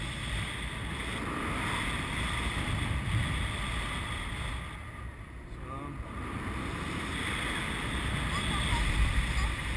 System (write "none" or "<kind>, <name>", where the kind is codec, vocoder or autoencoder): none